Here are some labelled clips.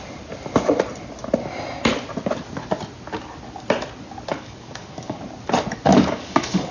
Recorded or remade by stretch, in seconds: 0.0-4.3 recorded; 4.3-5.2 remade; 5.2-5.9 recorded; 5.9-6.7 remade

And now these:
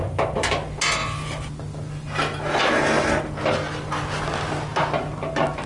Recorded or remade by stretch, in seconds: 0.0-0.6 remade; 0.6-5.7 recorded